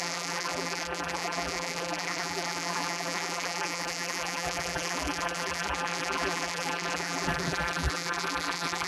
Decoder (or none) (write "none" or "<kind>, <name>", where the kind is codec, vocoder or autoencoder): vocoder, BigVGAN v2